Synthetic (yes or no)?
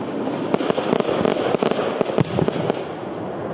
no